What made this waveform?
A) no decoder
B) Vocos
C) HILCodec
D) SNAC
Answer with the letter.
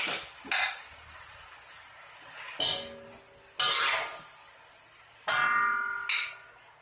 A